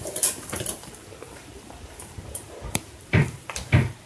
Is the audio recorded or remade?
remade